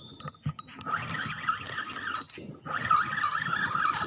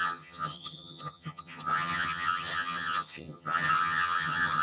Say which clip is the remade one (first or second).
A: second